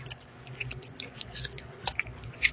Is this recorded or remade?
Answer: remade